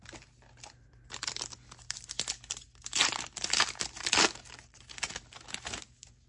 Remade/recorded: recorded